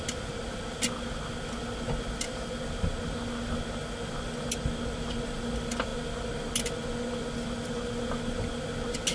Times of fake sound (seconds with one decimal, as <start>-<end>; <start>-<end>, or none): none